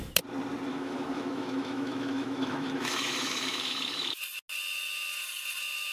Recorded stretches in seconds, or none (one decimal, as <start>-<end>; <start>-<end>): 0.0-0.7; 4.2-5.9